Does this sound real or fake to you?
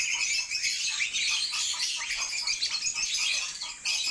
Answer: real